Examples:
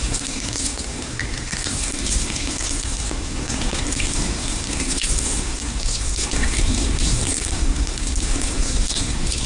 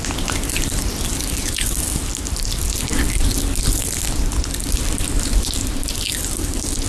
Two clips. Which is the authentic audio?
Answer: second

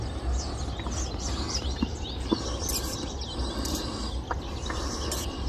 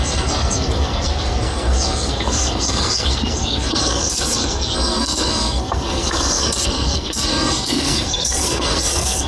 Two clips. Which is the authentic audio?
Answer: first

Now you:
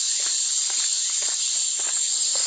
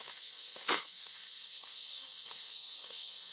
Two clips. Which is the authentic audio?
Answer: first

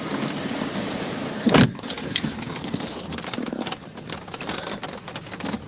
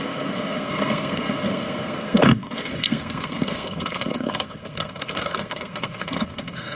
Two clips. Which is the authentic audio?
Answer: first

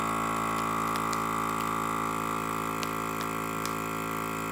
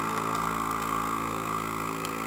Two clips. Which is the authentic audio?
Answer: first